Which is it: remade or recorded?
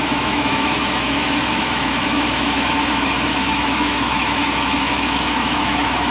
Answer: remade